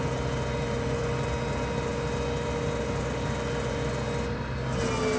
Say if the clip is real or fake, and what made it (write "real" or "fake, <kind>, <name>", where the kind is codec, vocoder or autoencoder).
real